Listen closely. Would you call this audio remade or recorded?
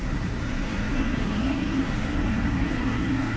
remade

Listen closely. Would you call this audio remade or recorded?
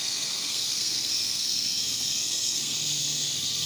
remade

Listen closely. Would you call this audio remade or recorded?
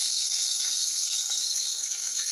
remade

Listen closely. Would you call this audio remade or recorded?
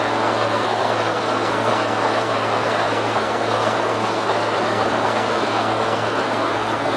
remade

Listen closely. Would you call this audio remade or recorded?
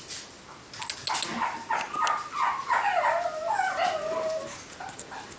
recorded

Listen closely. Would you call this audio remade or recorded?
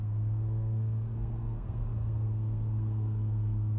remade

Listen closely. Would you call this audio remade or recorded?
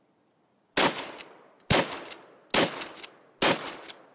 recorded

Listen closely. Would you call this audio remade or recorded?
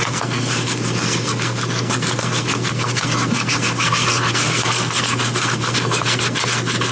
remade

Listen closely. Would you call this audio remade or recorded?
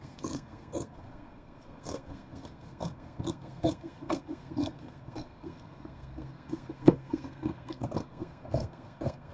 remade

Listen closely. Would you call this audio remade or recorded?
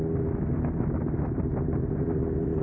recorded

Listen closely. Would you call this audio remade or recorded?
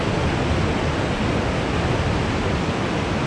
recorded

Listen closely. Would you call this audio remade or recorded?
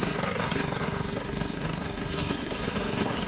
remade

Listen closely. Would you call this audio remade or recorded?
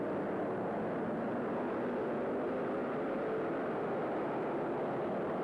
recorded